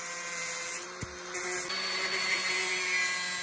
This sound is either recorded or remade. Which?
recorded